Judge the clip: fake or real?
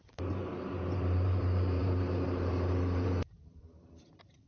fake